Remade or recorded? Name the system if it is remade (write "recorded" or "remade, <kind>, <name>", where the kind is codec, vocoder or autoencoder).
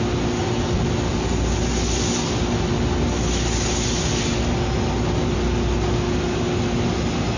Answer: recorded